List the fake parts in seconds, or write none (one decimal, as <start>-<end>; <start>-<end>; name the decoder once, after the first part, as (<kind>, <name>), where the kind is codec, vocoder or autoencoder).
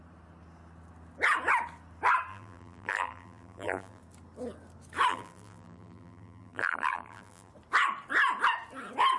2.3-4.0 (vocoder, BigVGAN v2); 5.1-7.5